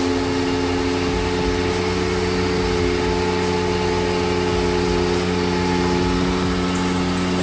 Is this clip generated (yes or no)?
no